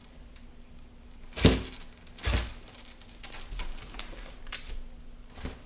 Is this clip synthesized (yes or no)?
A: no